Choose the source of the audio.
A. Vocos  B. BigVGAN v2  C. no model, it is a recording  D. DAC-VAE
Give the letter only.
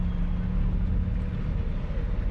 C